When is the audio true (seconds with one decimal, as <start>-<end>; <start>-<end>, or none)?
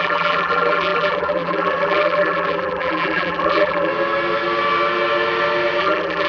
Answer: 3.9-5.8